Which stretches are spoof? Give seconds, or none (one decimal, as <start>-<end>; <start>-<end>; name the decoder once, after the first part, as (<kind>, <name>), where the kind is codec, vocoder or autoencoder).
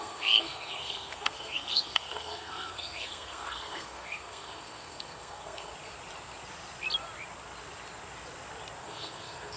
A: 0.0-5.7 (codec, SNAC); 8.8-9.6